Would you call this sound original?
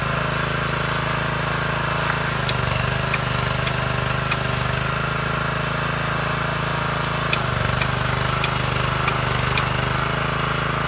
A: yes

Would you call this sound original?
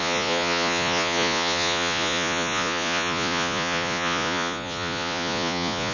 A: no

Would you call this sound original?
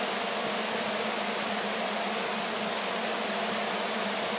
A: yes